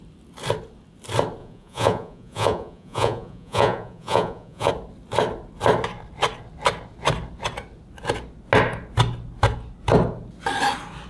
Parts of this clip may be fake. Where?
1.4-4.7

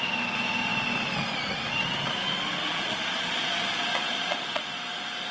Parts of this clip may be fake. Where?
2.6-4.6

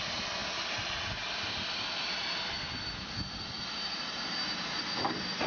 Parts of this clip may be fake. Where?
none

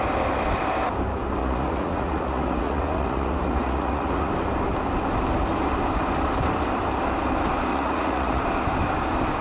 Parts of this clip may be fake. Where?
1.4-4.3; 7.7-8.4

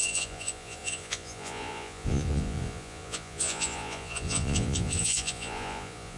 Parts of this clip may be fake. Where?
0.0-6.2

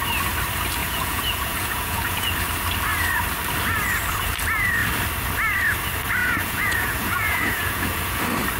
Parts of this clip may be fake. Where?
0.8-2.3; 6.2-8.2